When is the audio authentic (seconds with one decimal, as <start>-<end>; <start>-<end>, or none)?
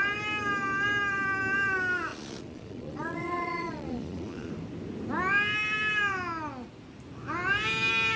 0.0-2.1; 4.5-8.2